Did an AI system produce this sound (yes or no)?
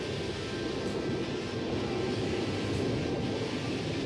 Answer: no